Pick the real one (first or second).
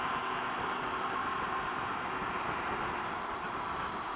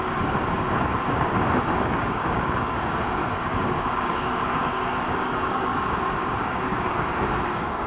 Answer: first